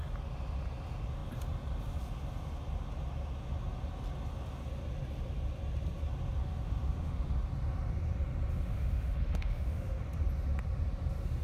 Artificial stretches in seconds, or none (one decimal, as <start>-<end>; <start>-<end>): 6.4-7.3; 8.7-10.0